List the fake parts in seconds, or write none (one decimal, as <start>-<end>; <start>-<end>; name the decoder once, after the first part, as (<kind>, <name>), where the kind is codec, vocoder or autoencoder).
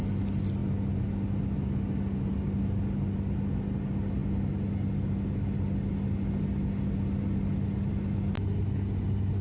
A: none